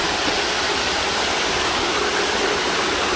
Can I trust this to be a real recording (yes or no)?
yes